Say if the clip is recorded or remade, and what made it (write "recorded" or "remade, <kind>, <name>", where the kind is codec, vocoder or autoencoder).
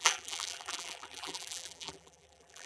remade, vocoder, BigVGAN v2